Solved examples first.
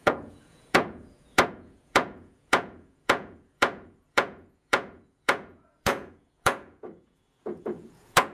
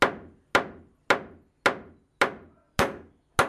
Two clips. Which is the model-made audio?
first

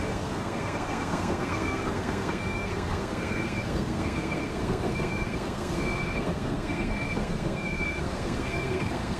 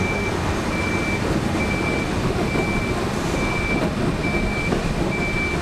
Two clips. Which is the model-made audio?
first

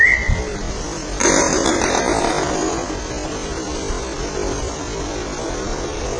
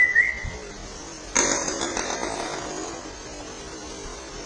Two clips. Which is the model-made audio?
first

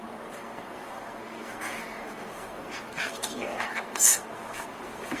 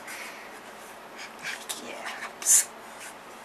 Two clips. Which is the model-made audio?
first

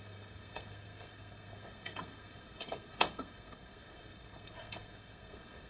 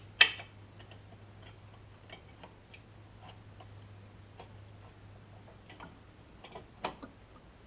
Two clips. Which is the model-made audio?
first